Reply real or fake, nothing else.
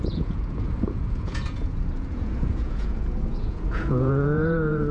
fake